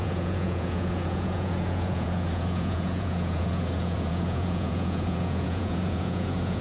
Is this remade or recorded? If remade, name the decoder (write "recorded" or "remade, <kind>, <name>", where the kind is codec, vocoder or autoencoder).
remade, vocoder, Vocos